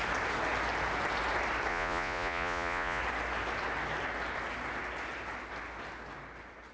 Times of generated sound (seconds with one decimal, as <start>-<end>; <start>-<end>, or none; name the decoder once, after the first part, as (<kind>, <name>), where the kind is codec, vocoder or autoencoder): 1.7-3.0 (vocoder, Vocos)